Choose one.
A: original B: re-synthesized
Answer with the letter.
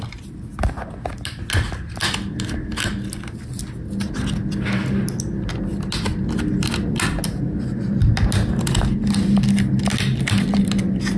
A